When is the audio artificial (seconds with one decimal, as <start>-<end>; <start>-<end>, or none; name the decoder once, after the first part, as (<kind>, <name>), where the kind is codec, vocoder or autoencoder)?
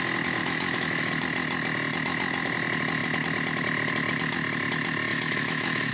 0.4-1.1 (autoencoder, DAC-VAE); 5.1-5.9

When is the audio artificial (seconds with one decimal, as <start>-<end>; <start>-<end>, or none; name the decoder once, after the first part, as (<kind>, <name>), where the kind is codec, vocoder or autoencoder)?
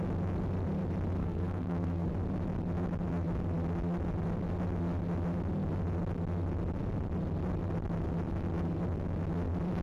1.2-2.1 (codec, SNAC)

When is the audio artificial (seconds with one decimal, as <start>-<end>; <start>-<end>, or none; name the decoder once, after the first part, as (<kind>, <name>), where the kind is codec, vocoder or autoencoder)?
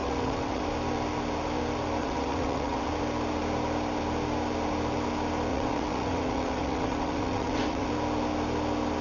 0.0-0.6 (vocoder, WaveNeXt); 2.0-2.9; 5.5-7.9